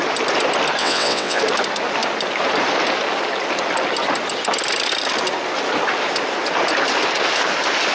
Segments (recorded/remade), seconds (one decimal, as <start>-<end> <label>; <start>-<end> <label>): 0.0-0.8 recorded; 0.8-1.4 remade; 1.4-7.9 recorded